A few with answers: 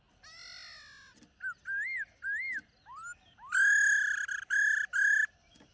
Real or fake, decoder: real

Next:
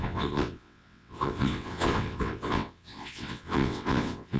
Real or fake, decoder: fake, vocoder, WaveNeXt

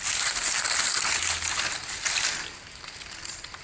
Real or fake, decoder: real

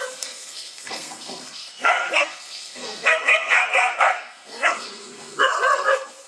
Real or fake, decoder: fake, codec, SNAC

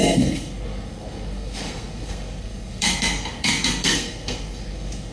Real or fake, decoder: fake, codec, SNAC